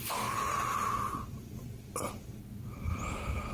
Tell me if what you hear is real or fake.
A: fake